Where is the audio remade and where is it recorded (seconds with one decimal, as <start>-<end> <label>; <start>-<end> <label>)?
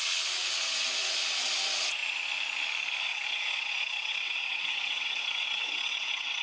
0.0-2.0 remade; 2.0-3.0 recorded; 3.0-6.4 remade